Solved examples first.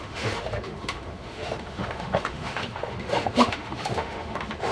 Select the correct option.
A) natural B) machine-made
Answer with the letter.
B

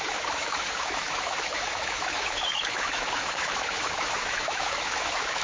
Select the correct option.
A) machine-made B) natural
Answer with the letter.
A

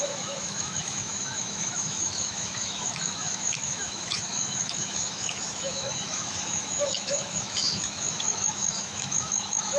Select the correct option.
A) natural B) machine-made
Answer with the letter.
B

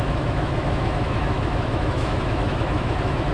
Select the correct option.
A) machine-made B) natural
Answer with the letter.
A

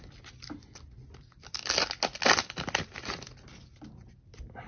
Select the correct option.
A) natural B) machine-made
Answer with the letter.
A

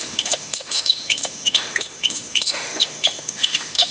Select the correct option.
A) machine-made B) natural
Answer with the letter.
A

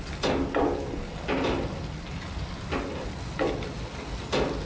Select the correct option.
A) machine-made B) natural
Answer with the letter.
B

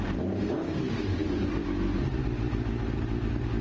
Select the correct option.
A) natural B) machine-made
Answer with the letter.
A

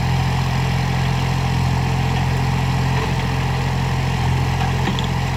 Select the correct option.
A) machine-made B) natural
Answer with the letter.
B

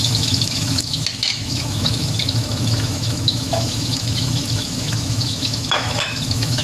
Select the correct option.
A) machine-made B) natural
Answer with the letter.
A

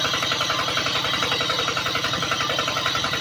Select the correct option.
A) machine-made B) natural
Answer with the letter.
B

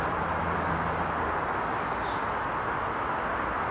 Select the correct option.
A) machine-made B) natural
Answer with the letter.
B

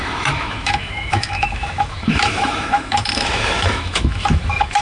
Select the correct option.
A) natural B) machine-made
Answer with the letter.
B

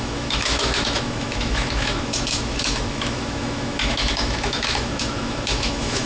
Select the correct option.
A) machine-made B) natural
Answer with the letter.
A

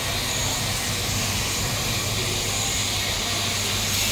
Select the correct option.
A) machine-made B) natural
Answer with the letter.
B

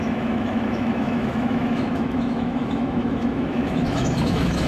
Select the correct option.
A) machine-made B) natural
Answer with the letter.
A